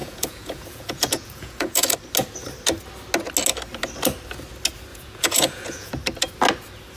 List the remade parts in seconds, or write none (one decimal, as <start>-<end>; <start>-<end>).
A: 0.0-1.9; 4.9-5.9